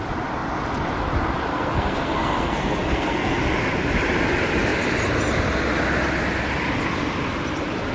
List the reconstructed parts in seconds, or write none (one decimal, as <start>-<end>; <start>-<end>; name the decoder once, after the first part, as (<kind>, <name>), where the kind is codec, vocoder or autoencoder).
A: 1.5-3.4 (codec, SNAC)

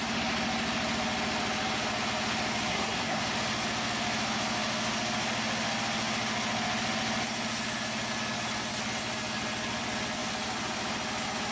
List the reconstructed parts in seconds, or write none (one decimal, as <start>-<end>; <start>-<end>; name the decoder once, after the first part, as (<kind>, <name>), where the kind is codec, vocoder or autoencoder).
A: 2.7-3.2 (codec, SNAC)

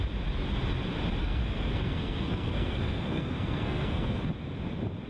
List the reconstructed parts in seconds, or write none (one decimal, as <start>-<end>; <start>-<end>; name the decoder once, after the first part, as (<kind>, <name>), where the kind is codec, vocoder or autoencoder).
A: 1.2-4.3 (codec, SNAC)

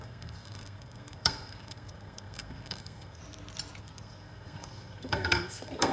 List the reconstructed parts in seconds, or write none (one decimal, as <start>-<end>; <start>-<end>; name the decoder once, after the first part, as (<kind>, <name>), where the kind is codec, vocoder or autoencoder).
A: 0.0-3.2 (codec, SNAC); 3.8-5.9

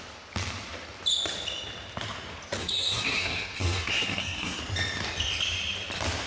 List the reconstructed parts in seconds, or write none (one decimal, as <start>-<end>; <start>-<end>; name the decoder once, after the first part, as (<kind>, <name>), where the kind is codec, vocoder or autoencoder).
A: 2.6-4.6 (codec, SNAC)